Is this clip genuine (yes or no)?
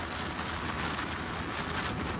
yes